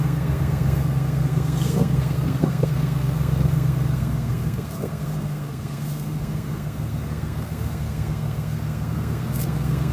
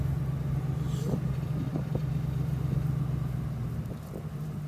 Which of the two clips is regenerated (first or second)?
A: first